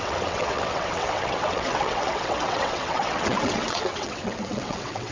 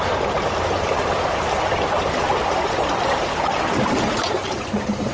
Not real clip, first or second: first